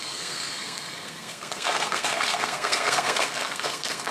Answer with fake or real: fake